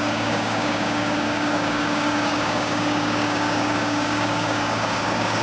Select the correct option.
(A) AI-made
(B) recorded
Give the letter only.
A